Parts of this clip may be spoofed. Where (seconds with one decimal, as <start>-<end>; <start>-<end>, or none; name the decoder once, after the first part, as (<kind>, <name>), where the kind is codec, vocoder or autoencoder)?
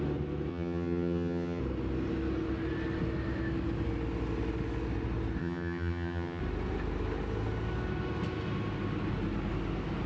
0.5-1.6 (vocoder, HiFi-GAN); 5.4-6.4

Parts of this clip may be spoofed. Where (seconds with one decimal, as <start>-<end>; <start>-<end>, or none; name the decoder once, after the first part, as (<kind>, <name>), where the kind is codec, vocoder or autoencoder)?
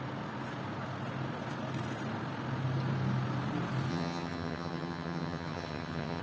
3.9-6.2 (vocoder, HiFi-GAN)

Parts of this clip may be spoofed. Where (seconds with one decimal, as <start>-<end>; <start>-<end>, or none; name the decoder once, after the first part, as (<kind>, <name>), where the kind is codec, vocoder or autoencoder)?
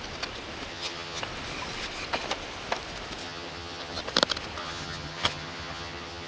0.7-1.2 (vocoder, HiFi-GAN); 3.2-4.0; 4.6-6.3